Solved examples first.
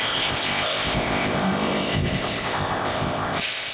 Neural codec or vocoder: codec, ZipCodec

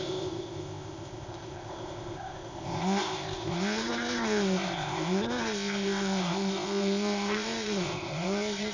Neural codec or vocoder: codec, ZipCodec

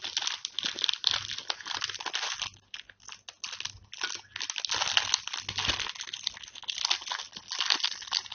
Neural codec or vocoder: none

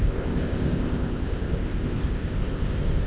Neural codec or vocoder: codec, ZipCodec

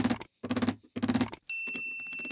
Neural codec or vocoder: none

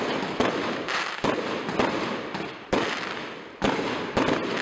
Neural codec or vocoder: none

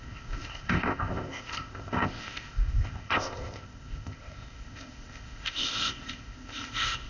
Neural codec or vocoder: codec, ZipCodec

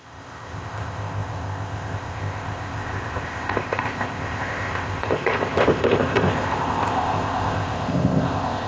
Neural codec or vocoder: codec, ZipCodec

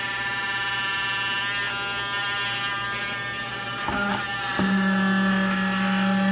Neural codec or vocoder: none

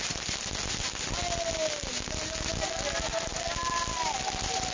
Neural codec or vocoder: none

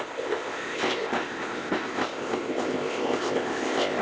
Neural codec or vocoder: codec, ZipCodec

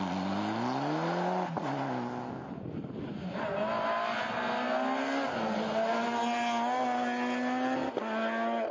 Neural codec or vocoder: none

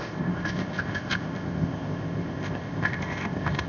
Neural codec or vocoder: codec, ZipCodec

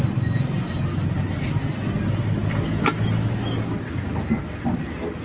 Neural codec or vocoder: none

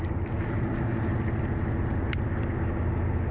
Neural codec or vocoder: none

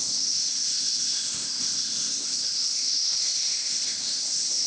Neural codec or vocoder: codec, ZipCodec